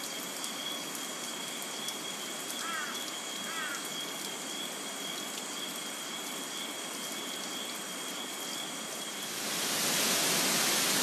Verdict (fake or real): real